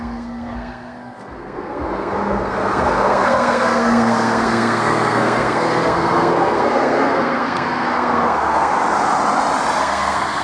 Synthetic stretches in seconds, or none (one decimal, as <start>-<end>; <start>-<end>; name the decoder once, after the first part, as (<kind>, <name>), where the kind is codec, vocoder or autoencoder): 0.0-8.7 (codec, SNAC); 9.8-10.4